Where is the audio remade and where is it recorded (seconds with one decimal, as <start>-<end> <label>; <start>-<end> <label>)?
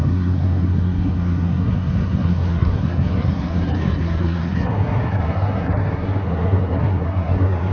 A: 0.0-7.7 remade